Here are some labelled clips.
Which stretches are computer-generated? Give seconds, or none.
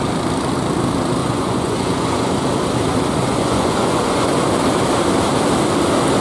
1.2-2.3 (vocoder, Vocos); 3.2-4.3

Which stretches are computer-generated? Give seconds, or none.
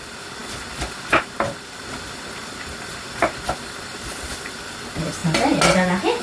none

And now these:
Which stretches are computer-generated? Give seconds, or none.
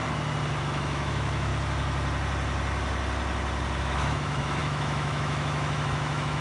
0.6-1.5 (autoencoder, DAC-VAE); 3.8-6.4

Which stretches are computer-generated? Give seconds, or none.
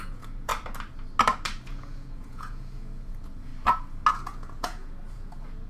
0.0-0.5 (vocoder, Vocos); 1.7-3.5; 4.1-5.7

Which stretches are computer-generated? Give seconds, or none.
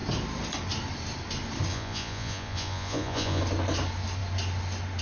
1.7-3.4 (vocoder, Vocos)